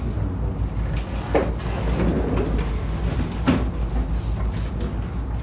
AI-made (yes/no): no